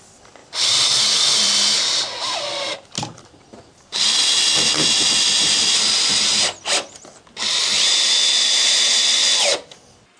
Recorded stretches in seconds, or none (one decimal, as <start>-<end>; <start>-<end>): 0.0-0.4; 4.3-10.2